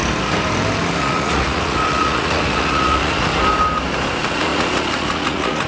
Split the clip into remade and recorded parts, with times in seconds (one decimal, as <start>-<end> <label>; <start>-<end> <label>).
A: 0.0-1.0 recorded; 1.0-3.3 remade; 3.3-4.1 recorded; 4.1-5.7 remade